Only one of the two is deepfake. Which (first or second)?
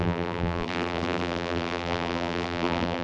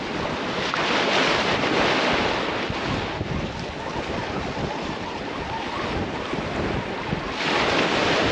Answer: first